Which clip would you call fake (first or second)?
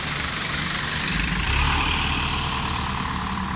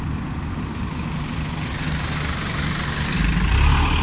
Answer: first